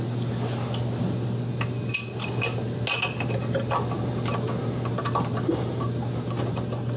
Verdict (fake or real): real